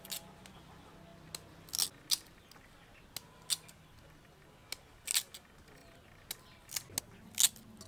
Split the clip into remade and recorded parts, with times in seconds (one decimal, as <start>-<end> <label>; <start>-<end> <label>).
0.0-7.9 recorded